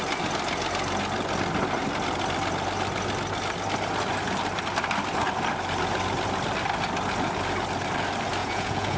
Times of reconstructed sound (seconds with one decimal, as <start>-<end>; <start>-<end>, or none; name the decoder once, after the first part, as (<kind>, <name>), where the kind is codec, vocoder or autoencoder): 8.4-9.0 (vocoder, Vocos)